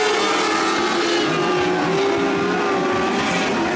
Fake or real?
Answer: real